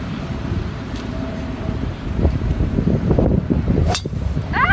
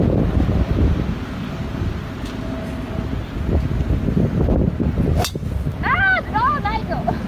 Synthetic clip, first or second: first